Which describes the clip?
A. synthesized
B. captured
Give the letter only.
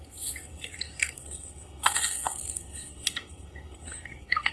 A